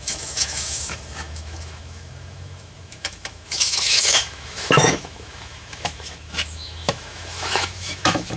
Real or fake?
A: fake